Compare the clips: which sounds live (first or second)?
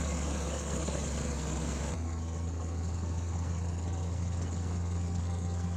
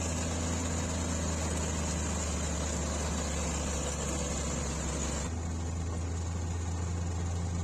second